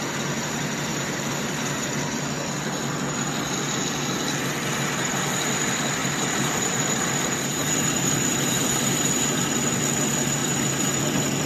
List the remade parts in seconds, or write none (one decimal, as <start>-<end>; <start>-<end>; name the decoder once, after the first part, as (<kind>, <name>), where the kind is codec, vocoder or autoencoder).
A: 0.9-1.9 (vocoder, BigVGAN v2); 6.0-9.2; 10.4-11.0